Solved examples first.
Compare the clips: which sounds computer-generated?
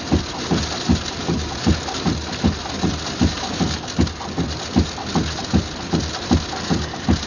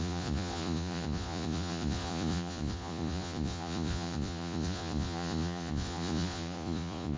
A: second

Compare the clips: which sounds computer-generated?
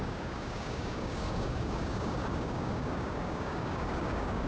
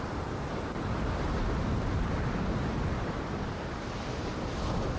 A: first